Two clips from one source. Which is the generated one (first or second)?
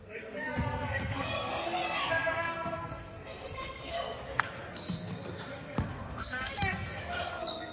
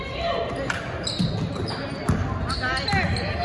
first